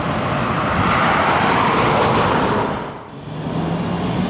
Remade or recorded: recorded